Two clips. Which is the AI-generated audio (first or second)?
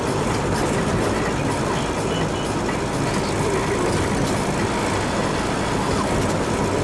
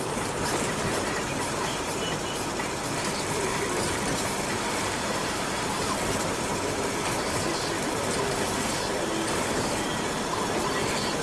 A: second